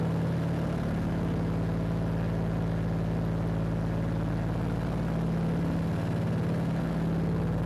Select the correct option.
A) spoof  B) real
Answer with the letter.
B